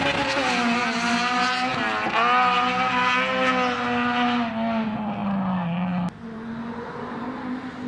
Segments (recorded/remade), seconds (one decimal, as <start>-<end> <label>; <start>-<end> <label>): 0.0-7.9 recorded